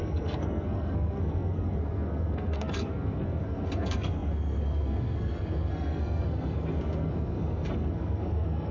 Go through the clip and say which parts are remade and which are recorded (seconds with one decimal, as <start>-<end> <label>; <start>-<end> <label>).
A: 0.0-8.7 remade